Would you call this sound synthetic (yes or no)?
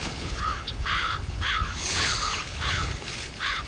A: yes